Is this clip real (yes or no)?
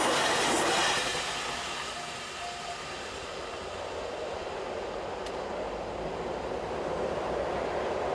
yes